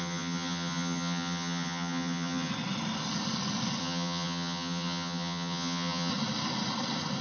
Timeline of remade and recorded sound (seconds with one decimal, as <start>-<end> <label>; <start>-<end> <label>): 0.0-2.5 remade; 2.5-3.8 recorded; 3.8-6.1 remade; 6.1-7.2 recorded